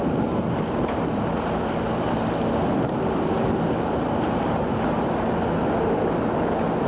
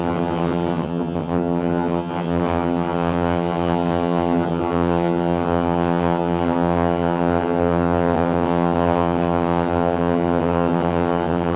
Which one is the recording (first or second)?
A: first